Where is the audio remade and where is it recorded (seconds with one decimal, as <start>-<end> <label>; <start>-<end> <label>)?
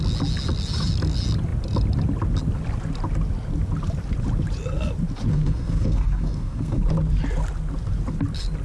0.0-5.3 recorded; 5.3-6.8 remade; 6.8-8.6 recorded